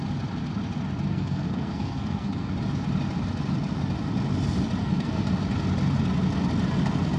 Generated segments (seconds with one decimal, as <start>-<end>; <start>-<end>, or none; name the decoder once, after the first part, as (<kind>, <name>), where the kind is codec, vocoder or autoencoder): 1.1-2.5 (codec, SNAC); 4.8-5.3